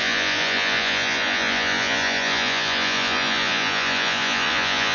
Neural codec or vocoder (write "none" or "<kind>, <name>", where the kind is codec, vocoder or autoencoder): vocoder, Vocos